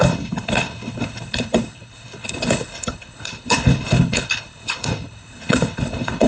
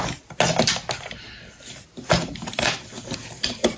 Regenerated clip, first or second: first